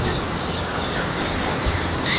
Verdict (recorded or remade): remade